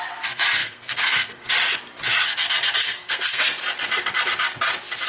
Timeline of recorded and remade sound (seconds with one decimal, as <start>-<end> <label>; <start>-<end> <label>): 0.0-0.6 recorded; 0.6-1.5 remade; 1.5-2.8 recorded; 2.8-3.4 remade; 3.4-5.1 recorded